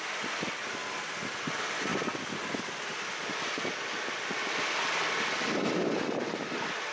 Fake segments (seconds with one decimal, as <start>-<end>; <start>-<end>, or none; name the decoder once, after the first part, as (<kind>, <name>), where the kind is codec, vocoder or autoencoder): 0.0-6.9 (vocoder, BigVGAN v2)